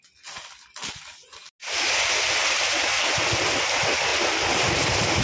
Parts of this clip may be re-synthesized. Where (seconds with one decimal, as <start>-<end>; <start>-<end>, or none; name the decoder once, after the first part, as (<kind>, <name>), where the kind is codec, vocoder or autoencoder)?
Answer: none